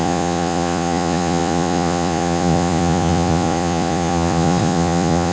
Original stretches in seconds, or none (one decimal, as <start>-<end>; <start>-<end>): none